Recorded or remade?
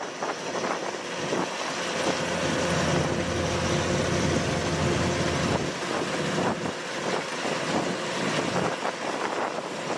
recorded